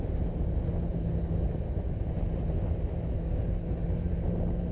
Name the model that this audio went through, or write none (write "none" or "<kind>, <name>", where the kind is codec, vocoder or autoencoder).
none